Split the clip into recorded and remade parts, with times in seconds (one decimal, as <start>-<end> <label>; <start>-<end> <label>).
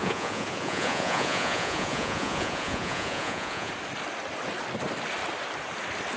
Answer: 0.0-3.7 remade; 3.7-6.2 recorded